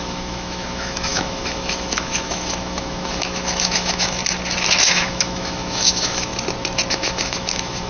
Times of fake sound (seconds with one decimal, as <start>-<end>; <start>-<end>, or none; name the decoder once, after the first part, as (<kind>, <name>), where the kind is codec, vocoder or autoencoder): 0.0-4.2 (autoencoder, DAC-VAE); 4.8-6.3; 6.9-7.9